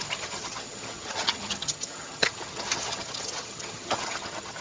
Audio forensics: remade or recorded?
remade